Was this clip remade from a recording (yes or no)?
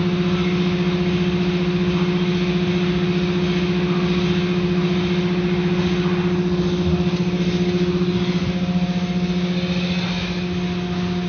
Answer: no